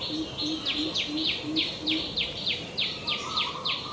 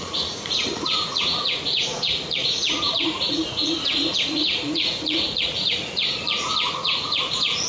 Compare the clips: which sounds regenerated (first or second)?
second